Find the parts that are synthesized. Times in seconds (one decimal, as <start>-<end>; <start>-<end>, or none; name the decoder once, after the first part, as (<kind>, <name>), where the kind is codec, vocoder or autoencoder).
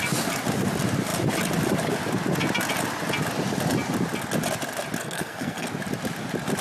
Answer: 5.0-5.7 (codec, SNAC)